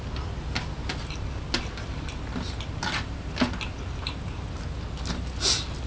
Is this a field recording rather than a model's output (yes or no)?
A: yes